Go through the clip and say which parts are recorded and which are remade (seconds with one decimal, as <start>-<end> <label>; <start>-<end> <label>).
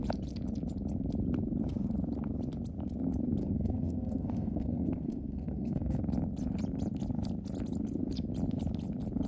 0.0-3.4 recorded; 3.4-6.0 remade; 6.0-9.3 recorded